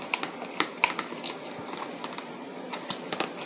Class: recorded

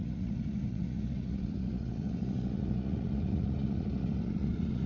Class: remade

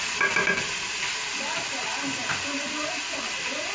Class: recorded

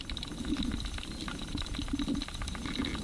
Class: recorded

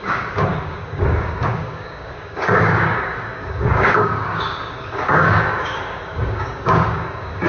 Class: remade